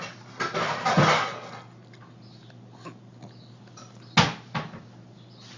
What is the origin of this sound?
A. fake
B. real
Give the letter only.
B